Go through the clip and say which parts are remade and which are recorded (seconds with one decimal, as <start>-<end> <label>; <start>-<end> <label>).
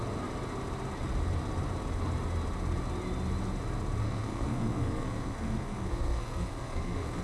0.0-4.0 recorded; 4.0-7.2 remade